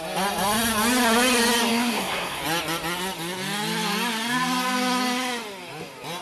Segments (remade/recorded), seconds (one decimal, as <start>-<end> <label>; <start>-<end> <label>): 0.0-1.7 recorded; 1.7-2.4 remade; 2.4-6.2 recorded